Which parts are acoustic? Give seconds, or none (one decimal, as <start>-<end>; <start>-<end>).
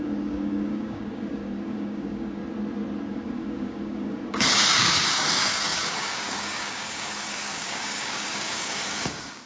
2.4-3.1